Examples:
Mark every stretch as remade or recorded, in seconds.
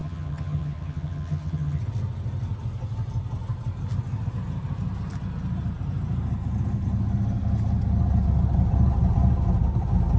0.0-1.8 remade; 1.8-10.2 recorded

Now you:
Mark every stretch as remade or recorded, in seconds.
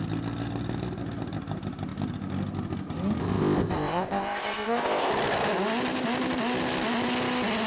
0.0-3.2 recorded; 3.2-5.1 remade; 5.1-7.7 recorded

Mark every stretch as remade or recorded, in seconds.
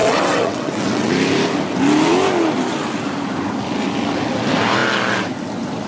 0.0-1.1 remade; 1.1-5.9 recorded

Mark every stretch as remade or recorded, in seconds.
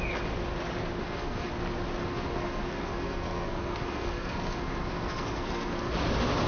0.0-1.0 recorded; 1.0-1.5 remade; 1.5-2.0 recorded; 2.0-5.9 remade; 5.9-6.5 recorded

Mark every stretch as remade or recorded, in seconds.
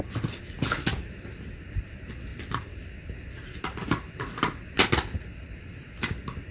0.0-6.5 recorded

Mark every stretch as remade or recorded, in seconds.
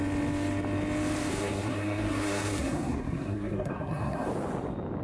0.0-1.3 recorded; 1.3-4.3 remade; 4.3-5.0 recorded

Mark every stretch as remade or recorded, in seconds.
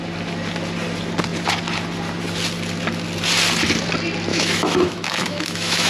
0.0-4.3 recorded; 4.3-5.9 remade